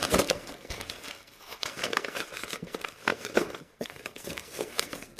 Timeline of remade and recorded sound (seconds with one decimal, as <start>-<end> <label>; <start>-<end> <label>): 0.0-5.2 remade